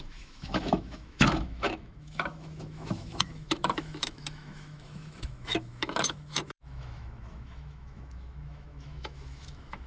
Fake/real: fake